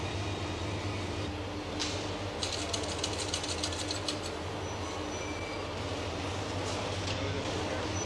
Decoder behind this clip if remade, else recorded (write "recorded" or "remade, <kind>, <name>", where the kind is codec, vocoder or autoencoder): recorded